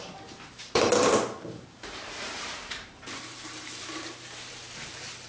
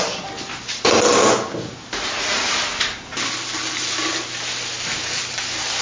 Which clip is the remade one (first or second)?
first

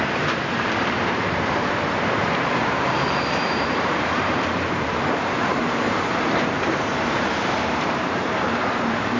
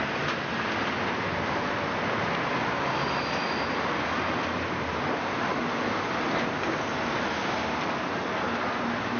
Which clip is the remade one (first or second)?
first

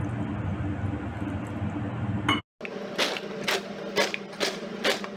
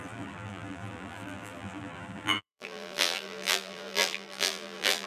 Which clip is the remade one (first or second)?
second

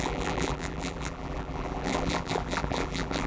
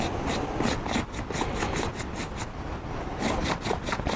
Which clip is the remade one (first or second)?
first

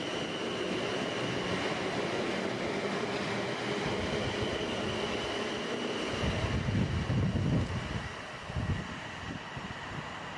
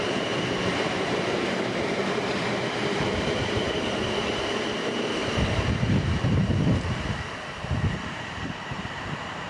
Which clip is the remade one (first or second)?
second